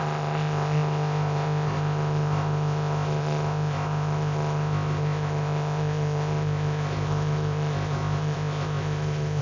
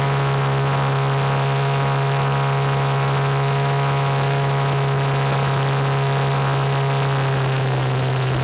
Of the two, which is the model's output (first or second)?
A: first